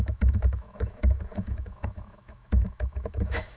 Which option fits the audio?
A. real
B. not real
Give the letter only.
B